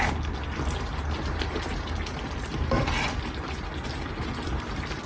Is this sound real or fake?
real